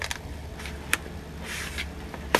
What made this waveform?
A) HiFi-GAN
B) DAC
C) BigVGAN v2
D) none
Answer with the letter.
D